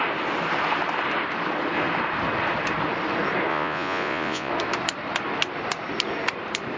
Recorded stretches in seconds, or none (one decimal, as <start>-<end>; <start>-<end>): 0.0-3.5; 4.5-6.8